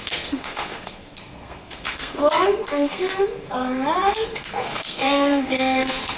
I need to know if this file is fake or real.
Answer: fake